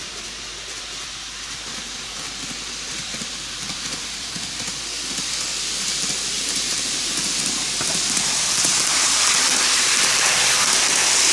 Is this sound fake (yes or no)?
yes